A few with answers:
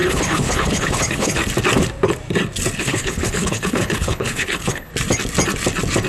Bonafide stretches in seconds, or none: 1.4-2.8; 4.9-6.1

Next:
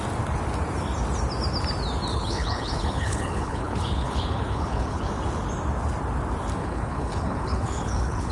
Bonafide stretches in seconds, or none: 0.0-2.1; 5.1-6.6

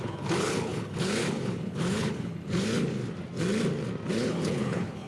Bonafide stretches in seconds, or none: 3.0-4.1

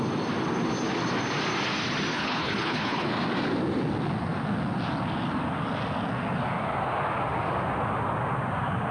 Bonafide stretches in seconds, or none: 0.0-2.1; 3.1-8.9

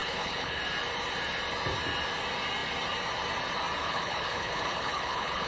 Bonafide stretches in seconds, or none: 0.6-3.8

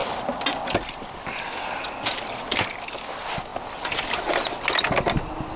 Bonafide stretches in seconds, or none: 0.0-5.6